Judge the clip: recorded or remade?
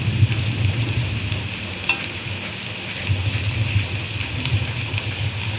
recorded